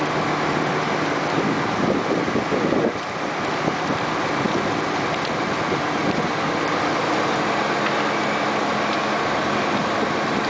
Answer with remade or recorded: recorded